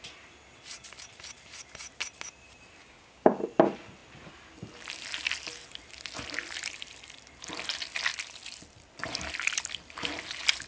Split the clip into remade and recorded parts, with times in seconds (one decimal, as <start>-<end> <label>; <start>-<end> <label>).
0.0-2.8 recorded; 2.8-3.4 remade; 3.4-10.7 recorded